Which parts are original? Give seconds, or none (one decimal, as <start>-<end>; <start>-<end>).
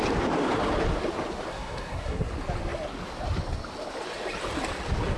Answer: 0.0-1.5; 2.3-5.2